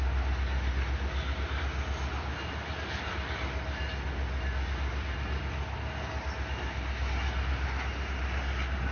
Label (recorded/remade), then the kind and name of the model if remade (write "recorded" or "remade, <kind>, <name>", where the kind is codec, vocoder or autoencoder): recorded